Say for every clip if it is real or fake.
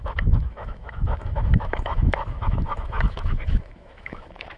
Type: fake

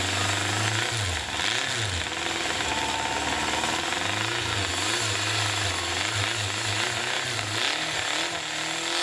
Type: real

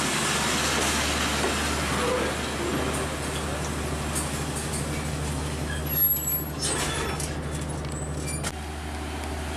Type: real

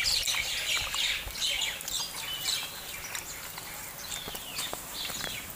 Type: real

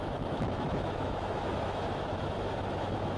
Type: fake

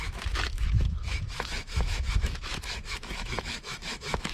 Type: fake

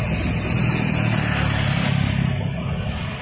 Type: real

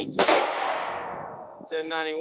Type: fake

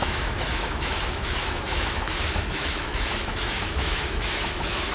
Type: fake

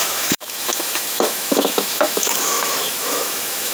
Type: fake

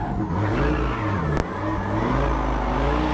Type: real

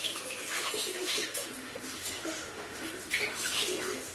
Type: fake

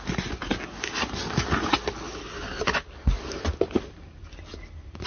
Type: real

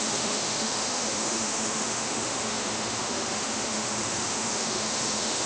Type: fake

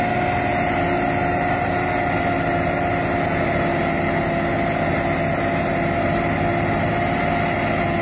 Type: real